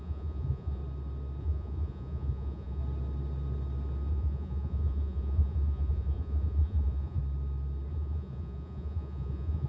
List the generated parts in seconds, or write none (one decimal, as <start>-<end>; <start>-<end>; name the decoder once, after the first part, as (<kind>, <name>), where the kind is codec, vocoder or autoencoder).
0.0-0.8 (vocoder, Vocos); 1.4-2.8; 4.1-7.2; 7.9-9.7

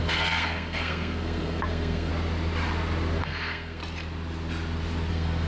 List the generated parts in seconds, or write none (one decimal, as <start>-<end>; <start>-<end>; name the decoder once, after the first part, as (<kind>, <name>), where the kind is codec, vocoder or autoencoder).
0.0-2.1 (codec, SNAC); 3.2-3.8; 5.1-5.5

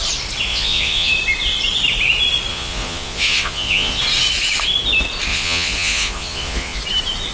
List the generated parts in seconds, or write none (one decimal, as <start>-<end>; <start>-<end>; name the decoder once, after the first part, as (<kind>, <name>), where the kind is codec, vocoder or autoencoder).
0.5-1.1 (vocoder, Vocos); 2.5-4.0; 5.3-6.8

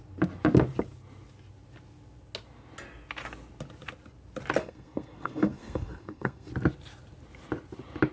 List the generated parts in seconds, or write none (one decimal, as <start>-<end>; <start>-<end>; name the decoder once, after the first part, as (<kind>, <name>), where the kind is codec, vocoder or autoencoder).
4.6-6.5 (codec, SNAC)

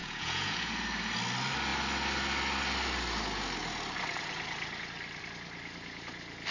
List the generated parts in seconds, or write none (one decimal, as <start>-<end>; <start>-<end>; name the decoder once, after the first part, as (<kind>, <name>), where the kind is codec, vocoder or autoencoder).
0.0-0.7 (vocoder, Vocos)